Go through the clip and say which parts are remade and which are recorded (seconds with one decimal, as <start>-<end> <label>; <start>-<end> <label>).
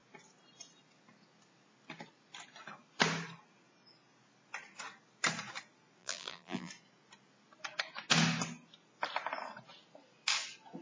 0.0-6.0 recorded; 6.0-6.7 remade; 6.7-10.8 recorded